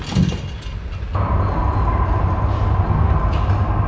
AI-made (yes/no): no